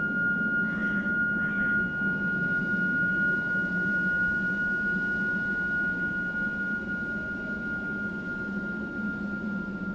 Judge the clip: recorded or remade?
recorded